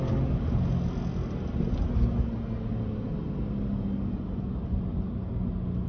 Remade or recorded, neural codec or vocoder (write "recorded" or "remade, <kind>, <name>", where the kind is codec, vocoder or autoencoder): recorded